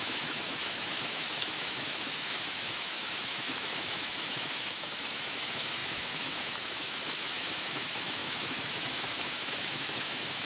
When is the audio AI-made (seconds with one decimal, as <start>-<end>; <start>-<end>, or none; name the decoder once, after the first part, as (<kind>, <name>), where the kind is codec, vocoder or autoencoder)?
0.0-10.4 (autoencoder, DAC-VAE)